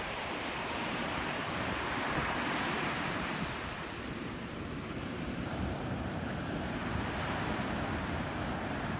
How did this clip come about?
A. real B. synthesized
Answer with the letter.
B